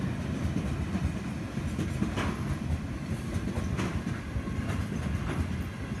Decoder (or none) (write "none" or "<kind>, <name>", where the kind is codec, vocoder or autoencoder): none